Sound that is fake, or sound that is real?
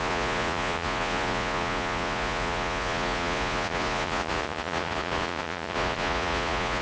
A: fake